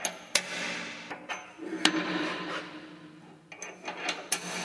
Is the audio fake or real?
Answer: real